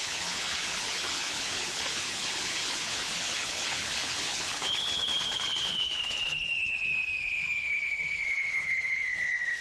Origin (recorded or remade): remade